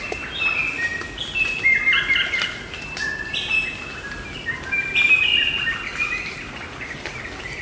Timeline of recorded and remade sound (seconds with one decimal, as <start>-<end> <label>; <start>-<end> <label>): 0.0-7.6 recorded